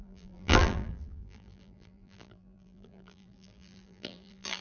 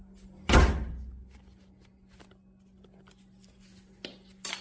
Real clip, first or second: second